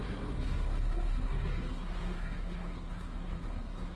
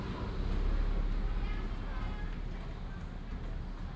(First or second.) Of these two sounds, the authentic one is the second